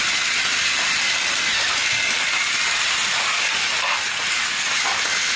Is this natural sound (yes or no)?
yes